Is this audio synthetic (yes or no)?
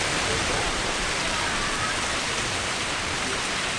yes